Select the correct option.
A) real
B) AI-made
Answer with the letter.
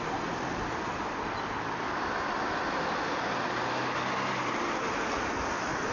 A